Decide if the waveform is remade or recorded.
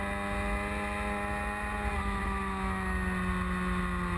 recorded